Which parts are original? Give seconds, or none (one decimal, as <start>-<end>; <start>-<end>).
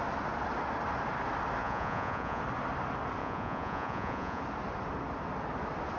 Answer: 0.0-1.6; 2.4-3.2; 4.4-6.0